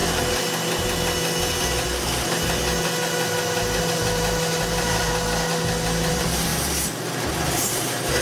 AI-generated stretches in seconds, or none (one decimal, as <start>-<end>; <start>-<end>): 3.8-5.1; 6.1-8.2